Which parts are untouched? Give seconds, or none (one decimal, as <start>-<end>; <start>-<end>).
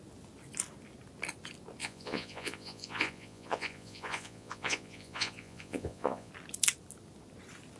0.0-1.8; 6.3-7.8